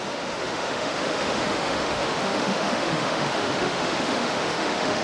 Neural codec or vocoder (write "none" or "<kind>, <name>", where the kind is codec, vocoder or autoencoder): autoencoder, DAC-VAE